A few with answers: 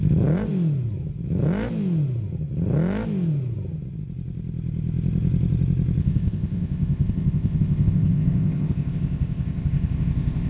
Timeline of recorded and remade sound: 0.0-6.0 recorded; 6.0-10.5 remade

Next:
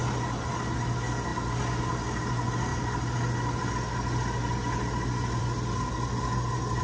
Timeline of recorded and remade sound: 0.0-6.8 recorded